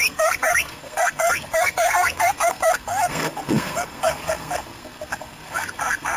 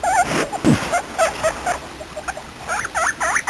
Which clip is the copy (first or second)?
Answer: first